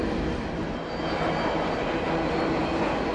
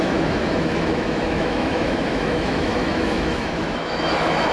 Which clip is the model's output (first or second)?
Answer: second